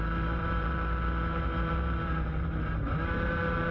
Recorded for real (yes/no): no